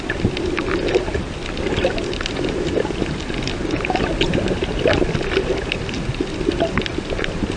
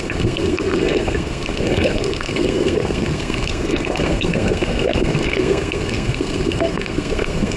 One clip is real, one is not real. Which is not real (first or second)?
second